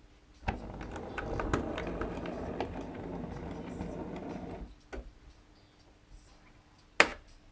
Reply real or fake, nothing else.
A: real